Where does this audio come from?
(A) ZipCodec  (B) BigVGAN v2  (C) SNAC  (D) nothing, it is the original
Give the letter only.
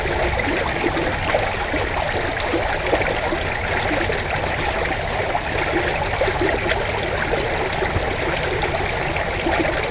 D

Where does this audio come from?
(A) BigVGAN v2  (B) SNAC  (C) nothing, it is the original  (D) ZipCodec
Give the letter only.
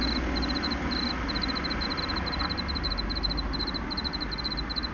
C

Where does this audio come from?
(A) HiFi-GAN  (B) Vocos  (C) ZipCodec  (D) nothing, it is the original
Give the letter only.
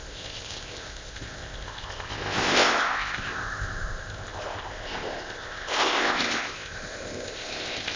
C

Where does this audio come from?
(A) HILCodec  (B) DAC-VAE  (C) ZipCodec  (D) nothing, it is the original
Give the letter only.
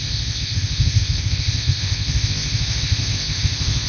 C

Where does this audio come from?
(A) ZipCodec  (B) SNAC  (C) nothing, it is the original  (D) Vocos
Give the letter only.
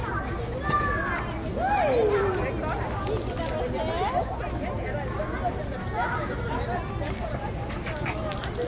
C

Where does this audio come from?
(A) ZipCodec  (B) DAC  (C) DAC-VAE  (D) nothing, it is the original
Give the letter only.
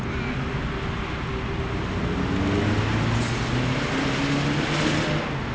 D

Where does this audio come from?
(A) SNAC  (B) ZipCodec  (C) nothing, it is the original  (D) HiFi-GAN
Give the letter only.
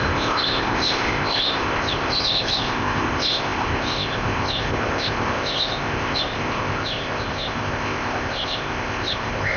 B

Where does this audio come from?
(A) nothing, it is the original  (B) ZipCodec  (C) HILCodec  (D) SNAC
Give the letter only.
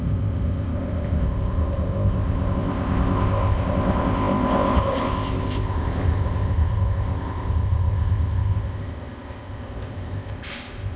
B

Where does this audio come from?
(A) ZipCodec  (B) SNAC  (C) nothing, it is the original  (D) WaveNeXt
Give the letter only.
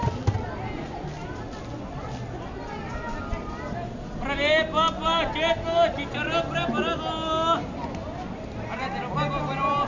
C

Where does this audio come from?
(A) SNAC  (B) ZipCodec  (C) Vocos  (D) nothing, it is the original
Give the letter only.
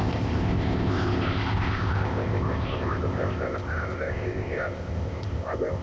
B